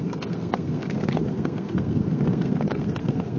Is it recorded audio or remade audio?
remade